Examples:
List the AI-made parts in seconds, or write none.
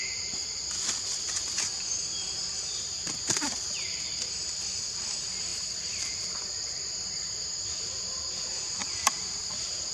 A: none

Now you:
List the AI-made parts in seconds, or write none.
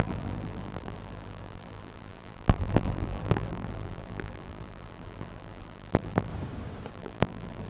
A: 0.0-6.3; 6.9-7.7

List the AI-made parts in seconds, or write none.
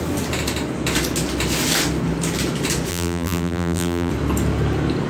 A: 2.9-4.1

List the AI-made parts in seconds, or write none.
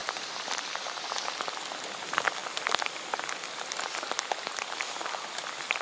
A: 0.0-1.4; 2.4-3.1